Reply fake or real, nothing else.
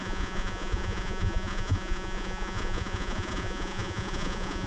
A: fake